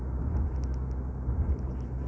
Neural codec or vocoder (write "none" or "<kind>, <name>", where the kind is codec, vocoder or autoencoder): none